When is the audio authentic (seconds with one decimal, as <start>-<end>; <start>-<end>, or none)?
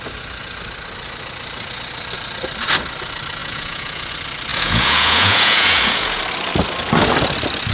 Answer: 0.0-3.4; 4.1-4.5; 6.2-7.7